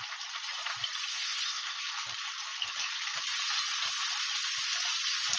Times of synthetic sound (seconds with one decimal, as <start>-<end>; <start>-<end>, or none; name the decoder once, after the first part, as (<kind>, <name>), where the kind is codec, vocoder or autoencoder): 1.1-1.8 (codec, SNAC)

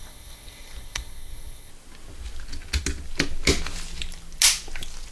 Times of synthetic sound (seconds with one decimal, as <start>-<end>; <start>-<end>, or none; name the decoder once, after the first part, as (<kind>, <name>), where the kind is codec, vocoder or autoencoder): 0.0-1.7 (codec, SNAC)

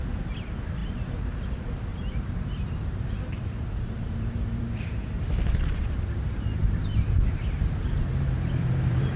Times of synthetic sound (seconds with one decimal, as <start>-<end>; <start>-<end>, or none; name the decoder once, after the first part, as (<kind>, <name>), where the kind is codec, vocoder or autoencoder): 1.9-5.8 (vocoder, BigVGAN v2); 6.6-9.2

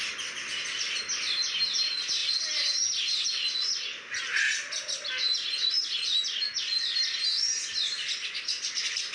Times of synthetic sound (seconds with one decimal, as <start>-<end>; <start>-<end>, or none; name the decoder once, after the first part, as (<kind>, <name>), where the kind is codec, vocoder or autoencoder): none